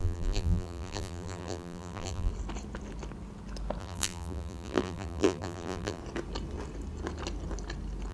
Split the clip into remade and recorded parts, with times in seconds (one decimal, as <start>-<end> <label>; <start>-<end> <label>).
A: 0.0-2.3 remade; 2.3-3.8 recorded; 3.8-6.0 remade; 6.0-8.1 recorded